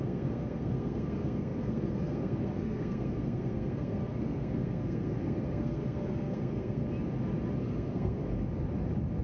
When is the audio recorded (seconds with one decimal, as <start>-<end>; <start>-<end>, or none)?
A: 6.8-7.6; 8.2-9.2